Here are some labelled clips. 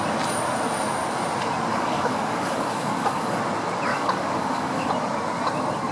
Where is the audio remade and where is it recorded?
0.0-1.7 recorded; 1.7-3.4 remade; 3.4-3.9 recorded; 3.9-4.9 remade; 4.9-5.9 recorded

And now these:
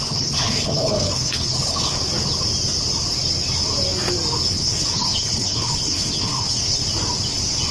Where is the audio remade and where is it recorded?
0.0-2.0 remade; 2.0-4.5 recorded; 4.5-6.8 remade; 6.8-7.7 recorded

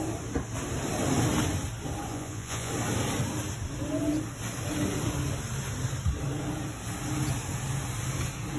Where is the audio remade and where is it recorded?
0.0-2.1 recorded; 2.1-2.7 remade; 2.7-8.6 recorded

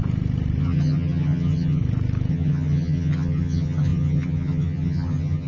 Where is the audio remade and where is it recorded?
0.0-0.6 recorded; 0.6-1.8 remade; 1.8-2.3 recorded; 2.3-5.5 remade

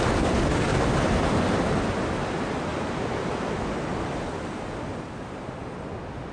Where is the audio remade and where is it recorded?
0.0-6.3 recorded